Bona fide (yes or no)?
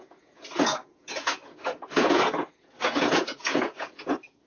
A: no